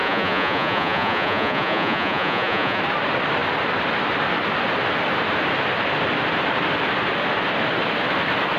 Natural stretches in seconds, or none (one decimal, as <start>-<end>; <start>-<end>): 2.8-8.6